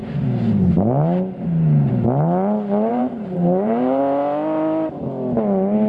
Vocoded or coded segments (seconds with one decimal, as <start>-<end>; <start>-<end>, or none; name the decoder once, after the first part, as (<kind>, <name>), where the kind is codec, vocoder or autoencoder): 0.0-1.9 (vocoder, BigVGAN v2); 2.9-4.0